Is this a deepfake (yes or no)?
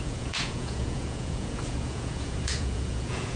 yes